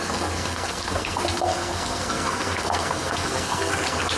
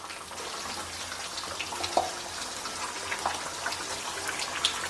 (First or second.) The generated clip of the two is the first